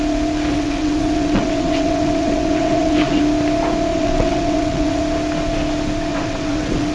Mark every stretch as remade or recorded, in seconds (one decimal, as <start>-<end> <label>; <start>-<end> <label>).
0.0-0.5 recorded; 0.5-3.2 remade; 3.2-3.9 recorded; 3.9-5.0 remade; 5.0-6.1 recorded; 6.1-6.9 remade